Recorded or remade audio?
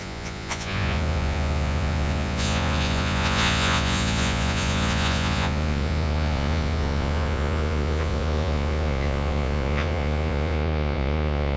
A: remade